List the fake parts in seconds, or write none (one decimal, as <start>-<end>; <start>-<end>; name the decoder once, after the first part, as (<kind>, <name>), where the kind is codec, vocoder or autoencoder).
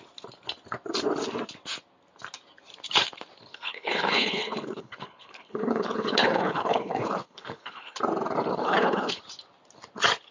3.5-8.0 (codec, HILCodec); 8.5-9.2